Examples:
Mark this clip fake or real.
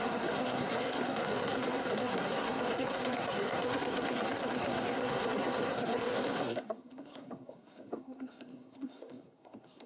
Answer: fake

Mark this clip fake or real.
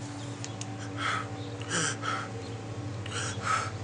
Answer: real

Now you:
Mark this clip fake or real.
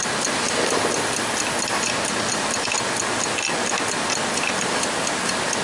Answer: real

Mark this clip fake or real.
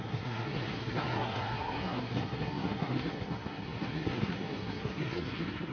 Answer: fake